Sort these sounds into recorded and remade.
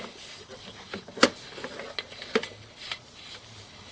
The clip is recorded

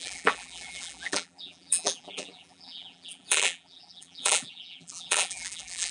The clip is remade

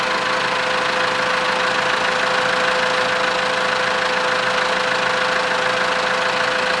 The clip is recorded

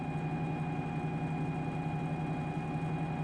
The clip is recorded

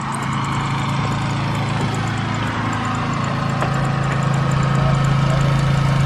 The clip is recorded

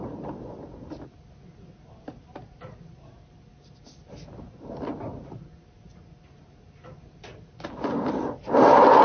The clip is recorded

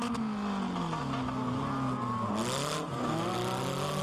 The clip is recorded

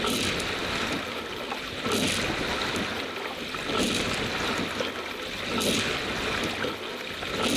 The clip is recorded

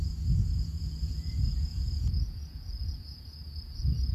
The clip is remade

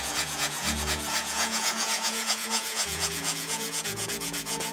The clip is remade